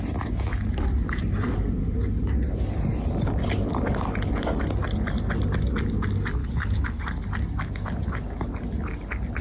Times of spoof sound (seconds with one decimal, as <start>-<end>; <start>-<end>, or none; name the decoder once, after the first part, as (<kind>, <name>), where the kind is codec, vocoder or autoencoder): 6.4-7.0 (codec, HILCodec)